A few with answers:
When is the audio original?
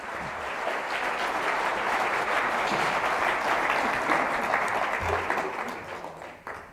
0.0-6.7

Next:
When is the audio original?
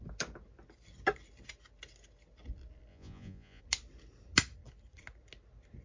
0.0-2.9; 3.6-5.8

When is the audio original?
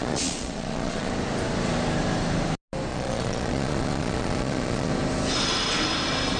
1.1-2.9; 4.9-6.4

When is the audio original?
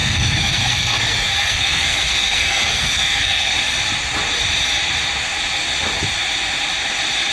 3.5-7.3